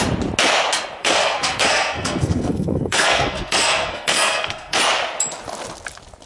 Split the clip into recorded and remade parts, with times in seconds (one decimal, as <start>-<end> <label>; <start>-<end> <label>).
0.0-1.0 recorded; 1.0-4.8 remade; 4.8-6.3 recorded

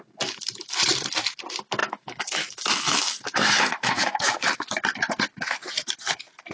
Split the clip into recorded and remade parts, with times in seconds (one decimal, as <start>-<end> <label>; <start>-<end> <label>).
0.0-1.8 recorded; 1.8-4.7 remade; 4.7-6.5 recorded

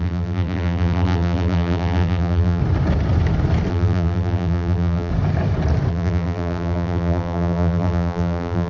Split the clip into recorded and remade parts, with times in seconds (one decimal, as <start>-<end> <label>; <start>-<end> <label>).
0.0-2.6 remade; 2.6-3.7 recorded; 3.7-5.1 remade; 5.1-5.9 recorded; 5.9-8.7 remade

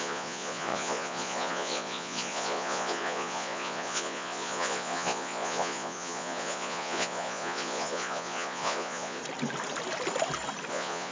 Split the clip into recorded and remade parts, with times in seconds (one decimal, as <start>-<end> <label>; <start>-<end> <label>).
0.0-9.2 remade; 9.2-10.7 recorded; 10.7-11.1 remade

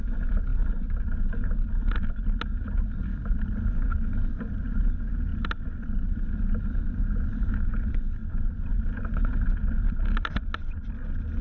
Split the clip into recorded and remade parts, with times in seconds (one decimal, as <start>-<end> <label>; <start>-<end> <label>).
0.0-5.3 recorded; 5.3-7.5 remade; 7.5-11.4 recorded

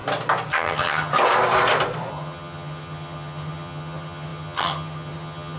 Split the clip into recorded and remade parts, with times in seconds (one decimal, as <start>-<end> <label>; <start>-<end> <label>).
0.0-0.5 recorded; 0.5-1.1 remade; 1.1-2.1 recorded; 2.1-5.6 remade

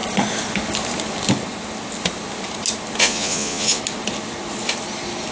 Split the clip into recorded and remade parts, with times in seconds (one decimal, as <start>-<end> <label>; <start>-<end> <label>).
0.0-3.0 recorded; 3.0-3.8 remade; 3.8-5.3 recorded

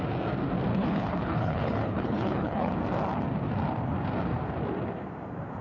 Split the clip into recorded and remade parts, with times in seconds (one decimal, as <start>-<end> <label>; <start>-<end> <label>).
0.0-0.7 recorded; 0.7-2.7 remade; 2.7-5.6 recorded